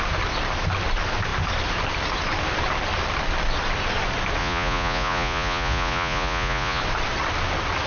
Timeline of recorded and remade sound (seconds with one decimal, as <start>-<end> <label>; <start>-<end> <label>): 0.0-4.4 recorded; 4.4-6.8 remade; 6.8-7.9 recorded